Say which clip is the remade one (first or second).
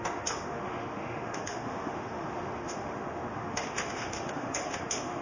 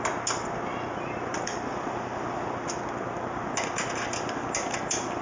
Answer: first